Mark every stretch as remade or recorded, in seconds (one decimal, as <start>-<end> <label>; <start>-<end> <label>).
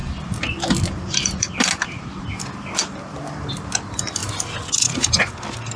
0.0-5.8 remade